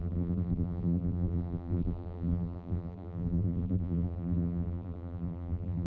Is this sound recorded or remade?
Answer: remade